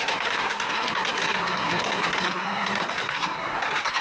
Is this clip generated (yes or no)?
yes